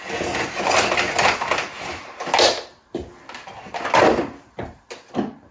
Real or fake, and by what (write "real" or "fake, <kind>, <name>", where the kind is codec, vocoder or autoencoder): real